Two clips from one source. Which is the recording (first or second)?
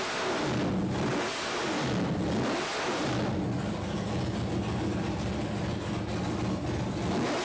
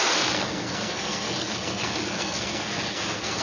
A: first